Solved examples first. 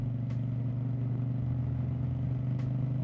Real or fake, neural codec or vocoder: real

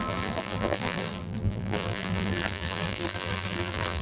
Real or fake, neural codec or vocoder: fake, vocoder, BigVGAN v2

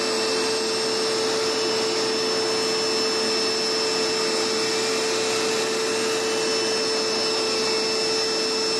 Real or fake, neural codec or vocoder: real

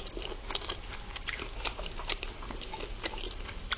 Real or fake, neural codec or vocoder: fake, vocoder, BigVGAN v2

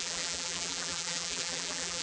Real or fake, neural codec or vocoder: fake, vocoder, BigVGAN v2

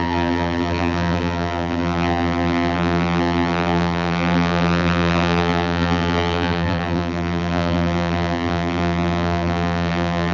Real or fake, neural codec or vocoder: fake, vocoder, BigVGAN v2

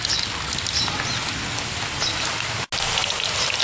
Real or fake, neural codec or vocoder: real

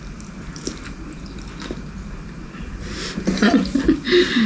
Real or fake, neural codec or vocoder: real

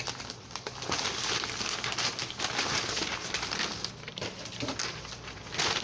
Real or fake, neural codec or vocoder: real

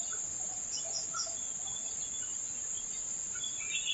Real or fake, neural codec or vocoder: real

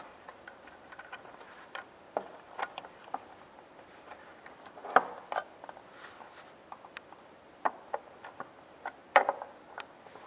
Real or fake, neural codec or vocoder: fake, vocoder, BigVGAN v2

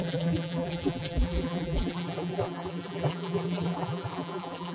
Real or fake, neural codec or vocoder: fake, vocoder, BigVGAN v2